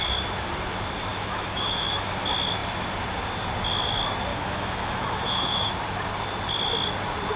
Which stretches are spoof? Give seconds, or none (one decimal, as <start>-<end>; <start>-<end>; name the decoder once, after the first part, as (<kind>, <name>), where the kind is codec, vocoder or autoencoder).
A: 1.1-2.1 (autoencoder, DAC-VAE); 4.3-5.7